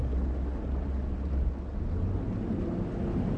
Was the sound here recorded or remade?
recorded